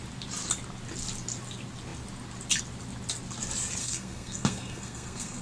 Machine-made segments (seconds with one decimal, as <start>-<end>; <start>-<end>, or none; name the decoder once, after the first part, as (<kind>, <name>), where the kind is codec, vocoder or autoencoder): 3.8-5.4 (codec, SNAC)